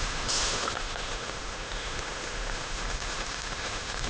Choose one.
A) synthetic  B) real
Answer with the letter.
A